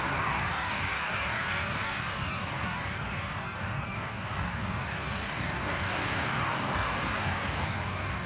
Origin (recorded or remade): remade